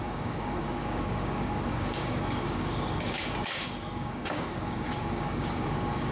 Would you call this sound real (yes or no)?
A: no